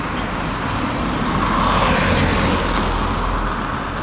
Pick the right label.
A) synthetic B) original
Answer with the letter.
B